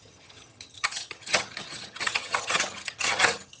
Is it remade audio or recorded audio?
remade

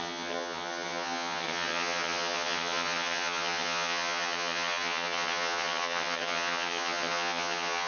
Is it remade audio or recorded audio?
remade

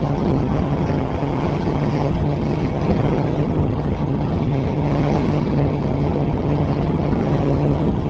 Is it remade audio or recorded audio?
remade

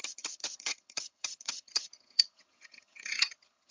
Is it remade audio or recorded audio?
remade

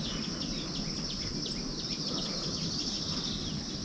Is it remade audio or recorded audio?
recorded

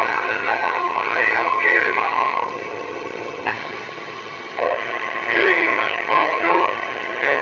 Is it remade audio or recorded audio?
remade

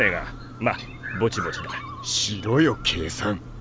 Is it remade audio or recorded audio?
recorded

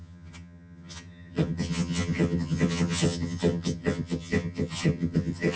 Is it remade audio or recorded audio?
remade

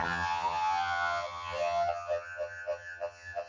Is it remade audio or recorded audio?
remade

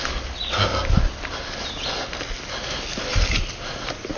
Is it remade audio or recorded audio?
recorded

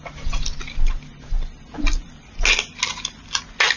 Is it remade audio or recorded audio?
recorded